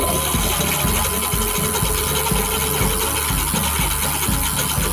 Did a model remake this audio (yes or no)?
no